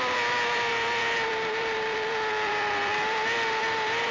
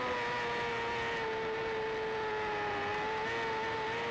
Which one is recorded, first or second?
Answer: second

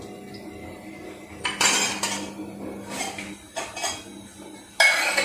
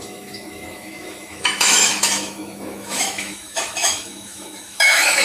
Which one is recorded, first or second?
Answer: first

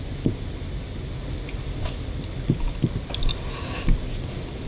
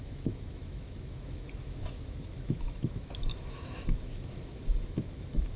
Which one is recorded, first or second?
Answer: first